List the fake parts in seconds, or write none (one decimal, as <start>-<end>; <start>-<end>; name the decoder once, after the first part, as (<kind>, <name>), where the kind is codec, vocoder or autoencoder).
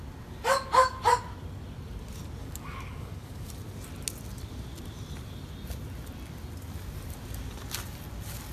2.4-3.5 (codec, DAC)